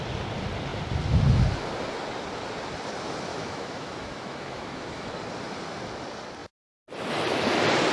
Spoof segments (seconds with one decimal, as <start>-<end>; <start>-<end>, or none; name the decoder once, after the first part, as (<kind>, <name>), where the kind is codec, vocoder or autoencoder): 3.3-5.1 (autoencoder, DAC-VAE)